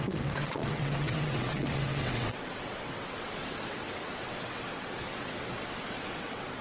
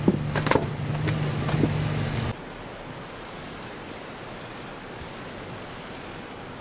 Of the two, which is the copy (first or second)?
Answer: first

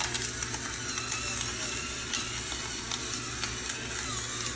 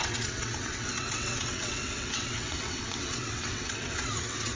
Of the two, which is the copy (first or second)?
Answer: second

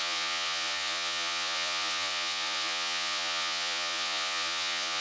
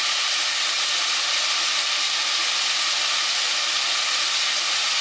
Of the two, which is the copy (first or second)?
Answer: first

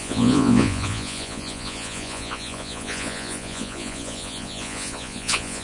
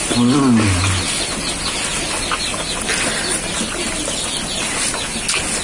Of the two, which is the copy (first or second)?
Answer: first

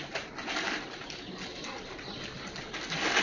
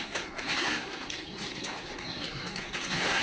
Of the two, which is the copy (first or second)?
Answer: second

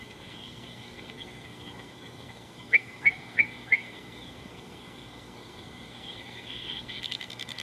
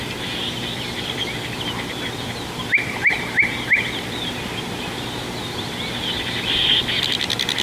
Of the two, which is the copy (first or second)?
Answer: first